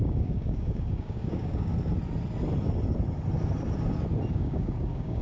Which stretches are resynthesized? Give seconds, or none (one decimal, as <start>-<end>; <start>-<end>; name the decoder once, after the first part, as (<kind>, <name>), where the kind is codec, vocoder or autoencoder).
0.0-1.7 (codec, DAC); 4.3-5.2